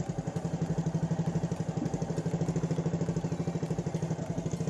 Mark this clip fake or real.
real